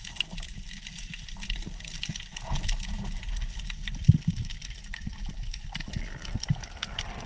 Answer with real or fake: real